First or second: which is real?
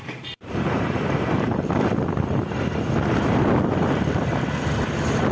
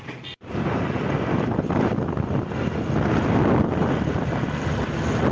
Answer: second